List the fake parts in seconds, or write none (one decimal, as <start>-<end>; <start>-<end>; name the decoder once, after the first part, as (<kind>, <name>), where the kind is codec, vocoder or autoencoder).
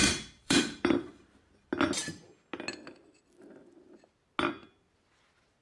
0.0-1.5 (vocoder, BigVGAN v2)